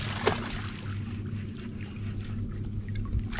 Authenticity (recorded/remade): recorded